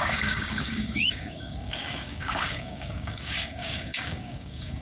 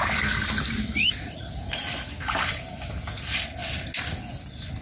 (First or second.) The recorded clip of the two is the second